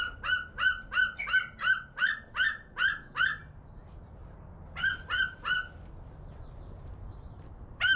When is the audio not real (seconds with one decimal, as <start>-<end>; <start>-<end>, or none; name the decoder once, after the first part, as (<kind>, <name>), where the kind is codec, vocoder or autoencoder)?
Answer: 0.0-3.4 (vocoder, BigVGAN v2); 6.3-8.0